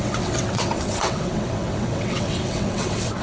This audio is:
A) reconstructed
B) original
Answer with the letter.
A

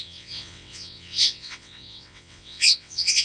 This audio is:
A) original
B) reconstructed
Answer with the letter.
B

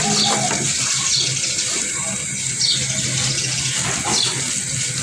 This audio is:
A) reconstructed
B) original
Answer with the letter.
B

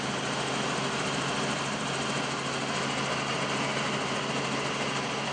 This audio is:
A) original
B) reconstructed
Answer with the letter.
A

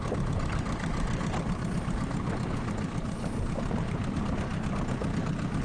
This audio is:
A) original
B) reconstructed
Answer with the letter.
A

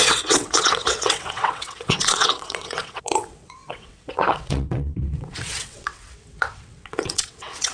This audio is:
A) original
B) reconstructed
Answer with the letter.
B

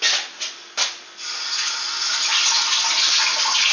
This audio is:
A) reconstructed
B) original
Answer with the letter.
B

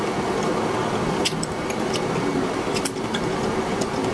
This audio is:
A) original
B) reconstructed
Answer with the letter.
A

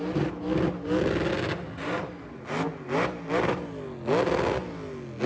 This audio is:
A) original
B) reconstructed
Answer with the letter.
A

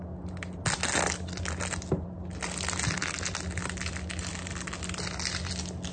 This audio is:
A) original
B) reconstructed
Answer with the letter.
A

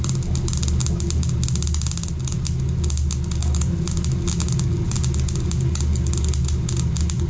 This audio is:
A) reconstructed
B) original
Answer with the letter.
B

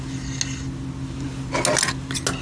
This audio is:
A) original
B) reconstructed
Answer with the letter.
A